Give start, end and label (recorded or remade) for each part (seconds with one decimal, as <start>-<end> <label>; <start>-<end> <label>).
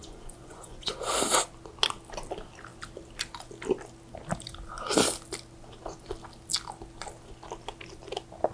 0.0-1.1 remade; 1.1-8.5 recorded